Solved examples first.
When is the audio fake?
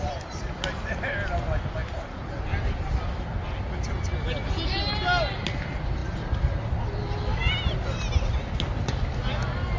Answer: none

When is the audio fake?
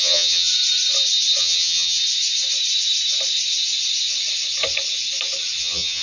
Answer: 0.0-0.5 (vocoder, HiFi-GAN); 1.4-2.0; 5.6-6.0